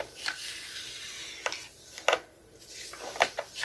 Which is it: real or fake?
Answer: real